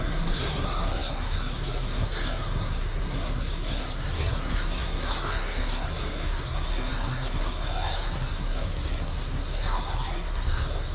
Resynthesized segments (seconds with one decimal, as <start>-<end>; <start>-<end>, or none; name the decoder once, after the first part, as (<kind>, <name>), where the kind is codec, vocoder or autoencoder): 0.0-10.9 (codec, SNAC)